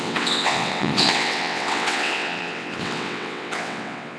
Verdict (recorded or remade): remade